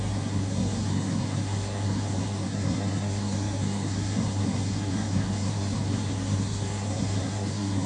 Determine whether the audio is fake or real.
fake